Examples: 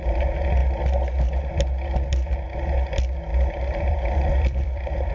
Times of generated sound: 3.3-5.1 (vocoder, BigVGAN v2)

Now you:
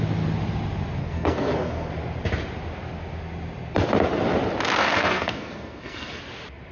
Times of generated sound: 1.0-1.9 (codec, SNAC); 4.8-6.2

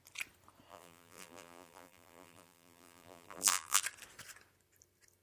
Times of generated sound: 0.7-3.8 (vocoder, BigVGAN v2)

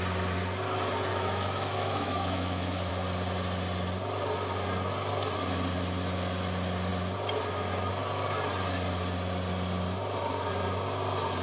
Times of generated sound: 1.1-2.9 (autoencoder, DAC-VAE)

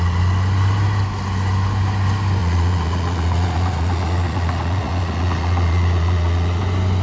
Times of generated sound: 2.4-6.6 (vocoder, Vocos)

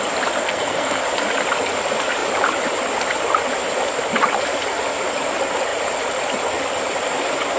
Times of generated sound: 0.4-1.0 (codec, SNAC)

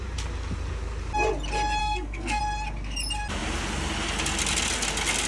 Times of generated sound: 1.8-2.4 (codec, SNAC)

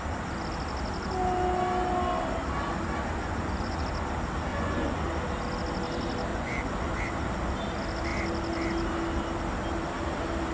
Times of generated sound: 3.2-3.8 (vocoder, Vocos); 4.5-5.0; 6.3-7.0